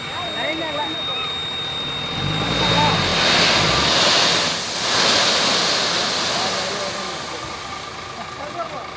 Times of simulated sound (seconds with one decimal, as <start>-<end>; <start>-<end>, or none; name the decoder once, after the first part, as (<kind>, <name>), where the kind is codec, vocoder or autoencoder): 1.4-2.6 (vocoder, BigVGAN v2)